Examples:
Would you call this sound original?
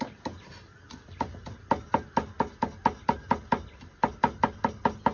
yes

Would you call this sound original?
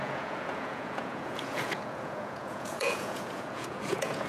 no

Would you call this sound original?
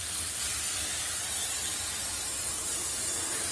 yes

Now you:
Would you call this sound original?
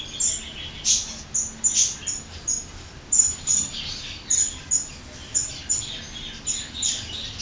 yes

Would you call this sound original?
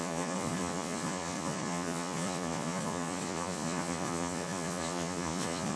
no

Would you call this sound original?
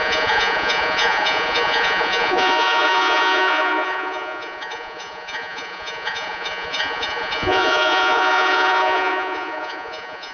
no